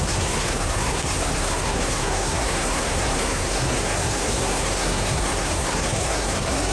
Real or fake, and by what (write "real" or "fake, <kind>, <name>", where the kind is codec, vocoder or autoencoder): fake, codec, SNAC